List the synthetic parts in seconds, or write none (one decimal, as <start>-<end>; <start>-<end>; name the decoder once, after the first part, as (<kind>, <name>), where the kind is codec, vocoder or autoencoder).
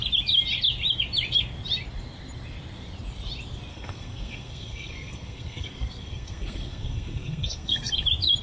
3.7-7.9 (codec, SNAC)